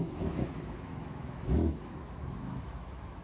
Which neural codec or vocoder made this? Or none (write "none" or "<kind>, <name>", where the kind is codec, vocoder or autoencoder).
autoencoder, DAC-VAE